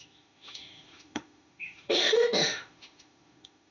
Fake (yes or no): yes